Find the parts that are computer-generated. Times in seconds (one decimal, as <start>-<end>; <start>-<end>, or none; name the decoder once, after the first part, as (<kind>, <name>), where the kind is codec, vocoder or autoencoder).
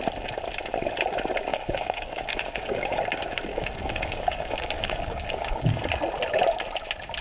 1.5-3.0 (codec, DAC); 3.5-5.8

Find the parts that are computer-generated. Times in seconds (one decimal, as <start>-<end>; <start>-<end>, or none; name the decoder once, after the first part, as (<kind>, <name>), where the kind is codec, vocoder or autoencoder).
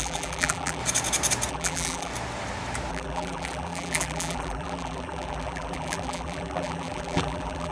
0.0-0.8 (vocoder, BigVGAN v2); 1.5-2.1; 2.9-7.7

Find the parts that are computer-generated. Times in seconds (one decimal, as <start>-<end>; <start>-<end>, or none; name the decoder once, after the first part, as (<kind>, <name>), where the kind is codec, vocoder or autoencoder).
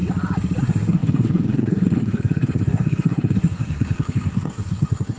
0.6-5.2 (codec, SNAC)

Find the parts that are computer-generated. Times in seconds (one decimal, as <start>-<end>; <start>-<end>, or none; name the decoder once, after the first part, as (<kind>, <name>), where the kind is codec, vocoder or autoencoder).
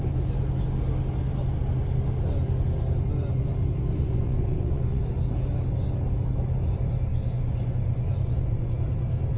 3.9-5.0 (vocoder, Vocos); 7.1-8.8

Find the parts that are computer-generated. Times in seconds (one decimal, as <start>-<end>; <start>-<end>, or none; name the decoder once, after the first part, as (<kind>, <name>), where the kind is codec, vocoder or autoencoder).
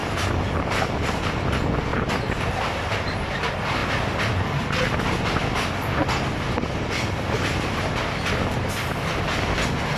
0.0-1.4 (vocoder, BigVGAN v2); 1.9-3.3